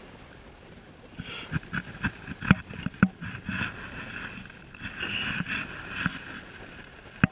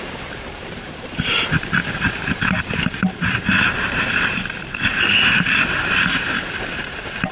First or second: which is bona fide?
first